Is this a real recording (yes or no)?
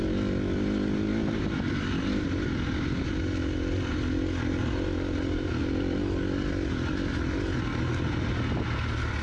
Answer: yes